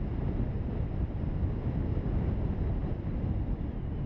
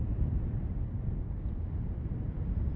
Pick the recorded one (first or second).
first